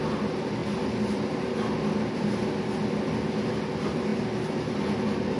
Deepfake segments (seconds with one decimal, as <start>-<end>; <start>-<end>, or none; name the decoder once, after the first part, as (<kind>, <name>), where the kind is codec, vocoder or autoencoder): none